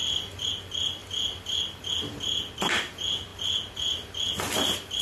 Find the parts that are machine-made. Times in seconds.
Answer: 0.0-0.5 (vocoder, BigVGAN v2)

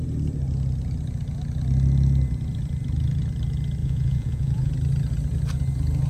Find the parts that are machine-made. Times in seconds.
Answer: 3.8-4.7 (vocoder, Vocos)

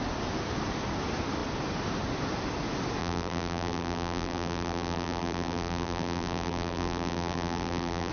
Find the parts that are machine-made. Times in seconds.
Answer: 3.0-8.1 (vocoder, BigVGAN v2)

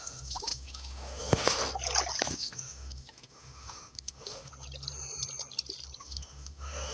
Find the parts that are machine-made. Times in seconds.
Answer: 0.0-1.6 (autoencoder, DAC-VAE); 2.3-4.5; 6.0-6.9